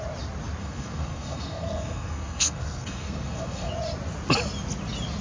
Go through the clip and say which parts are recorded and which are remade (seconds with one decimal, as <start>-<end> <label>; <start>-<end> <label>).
0.0-0.6 recorded; 0.6-3.7 remade; 3.7-5.2 recorded